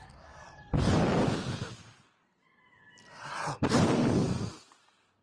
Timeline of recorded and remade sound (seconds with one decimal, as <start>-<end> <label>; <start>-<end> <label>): 0.0-5.2 recorded